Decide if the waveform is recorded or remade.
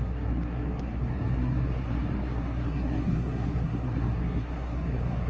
remade